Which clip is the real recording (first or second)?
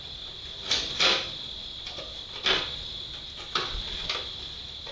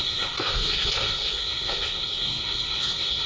first